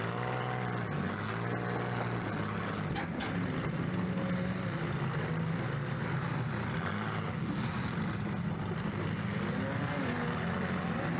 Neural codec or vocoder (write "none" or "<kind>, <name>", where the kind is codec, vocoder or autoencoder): none